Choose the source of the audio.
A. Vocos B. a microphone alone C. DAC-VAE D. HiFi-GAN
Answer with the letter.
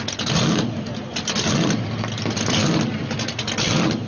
B